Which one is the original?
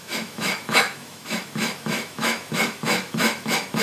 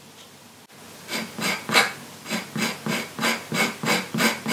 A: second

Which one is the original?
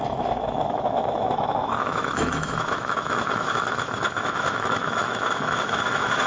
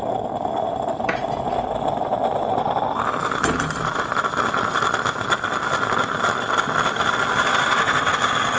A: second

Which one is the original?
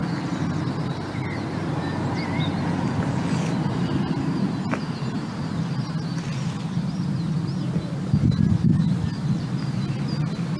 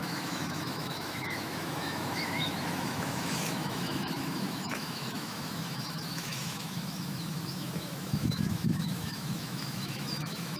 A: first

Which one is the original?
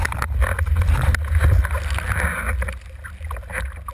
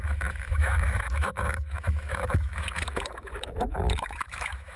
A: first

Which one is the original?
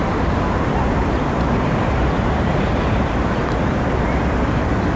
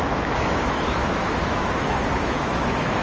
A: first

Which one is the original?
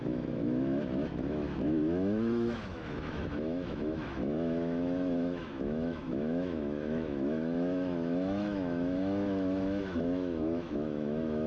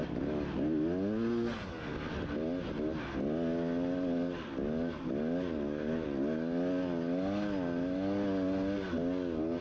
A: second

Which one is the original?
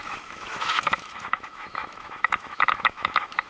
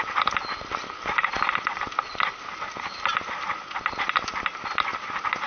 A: second